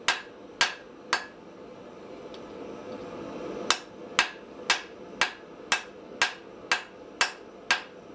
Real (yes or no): yes